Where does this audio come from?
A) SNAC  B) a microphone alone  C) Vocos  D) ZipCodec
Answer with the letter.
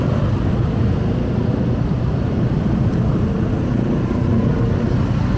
B